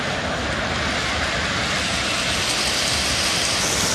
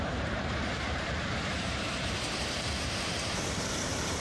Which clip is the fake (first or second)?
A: second